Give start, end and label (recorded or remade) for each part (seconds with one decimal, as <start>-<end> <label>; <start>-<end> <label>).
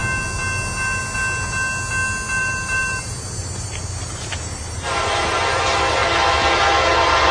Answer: 0.0-2.4 recorded; 2.4-5.6 remade; 5.6-7.3 recorded